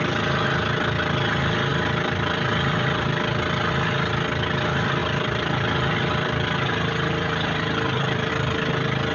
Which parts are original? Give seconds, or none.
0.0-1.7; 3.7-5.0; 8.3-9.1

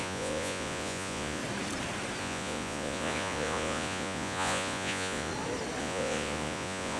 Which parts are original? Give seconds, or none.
1.4-2.2; 5.3-5.8

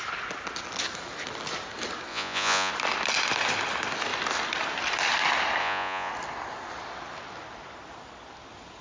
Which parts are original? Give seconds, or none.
0.0-2.1; 2.7-5.6; 6.1-8.8

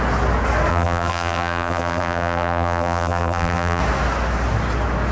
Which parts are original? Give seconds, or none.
0.0-0.7; 3.8-5.1

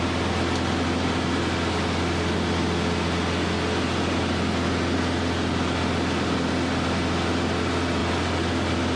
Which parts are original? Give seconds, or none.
0.0-9.0

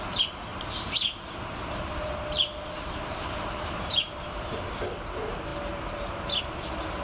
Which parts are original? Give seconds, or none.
0.0-0.5; 4.7-7.0